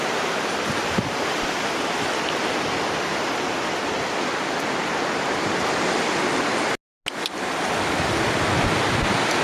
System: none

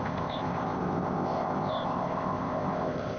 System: codec, ZipCodec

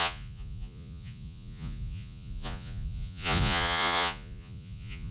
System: vocoder, Vocos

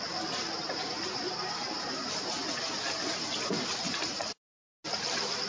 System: none